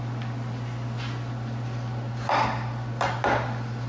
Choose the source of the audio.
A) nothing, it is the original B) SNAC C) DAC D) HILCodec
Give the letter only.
A